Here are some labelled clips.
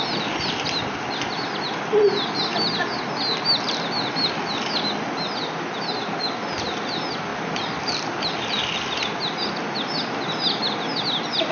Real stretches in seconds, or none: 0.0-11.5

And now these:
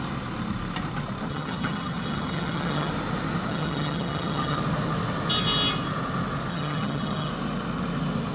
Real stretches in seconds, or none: 0.0-1.3; 2.9-3.5; 4.6-6.5; 7.3-8.3

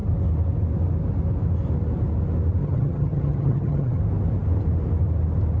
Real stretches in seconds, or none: 0.0-2.6; 4.0-5.6